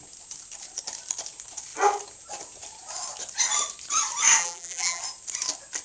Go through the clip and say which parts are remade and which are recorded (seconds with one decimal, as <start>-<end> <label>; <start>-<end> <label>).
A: 0.0-4.4 recorded; 4.4-5.0 remade; 5.0-5.8 recorded